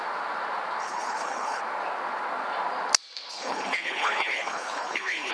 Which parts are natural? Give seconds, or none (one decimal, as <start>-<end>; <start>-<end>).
0.0-0.8; 1.6-3.3